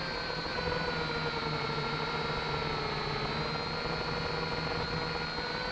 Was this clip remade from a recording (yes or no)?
no